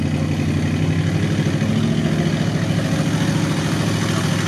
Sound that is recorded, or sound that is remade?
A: recorded